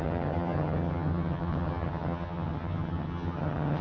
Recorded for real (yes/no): no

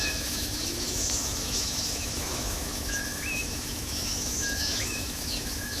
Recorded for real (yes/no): no